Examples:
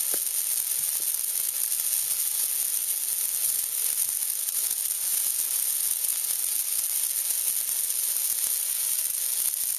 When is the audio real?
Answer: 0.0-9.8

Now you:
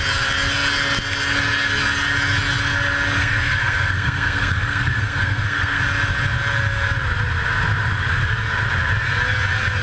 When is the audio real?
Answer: 0.0-3.2; 5.8-9.8

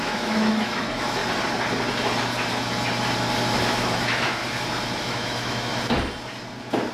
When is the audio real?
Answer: 1.2-3.6; 4.4-5.0; 5.7-6.9